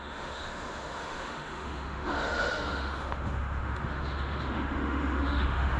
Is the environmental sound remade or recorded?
remade